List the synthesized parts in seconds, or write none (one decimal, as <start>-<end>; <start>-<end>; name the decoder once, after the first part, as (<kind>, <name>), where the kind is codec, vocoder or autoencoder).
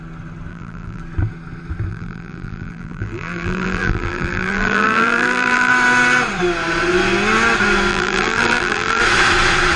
0.5-1.0 (vocoder, BigVGAN v2); 1.9-5.7; 7.9-9.0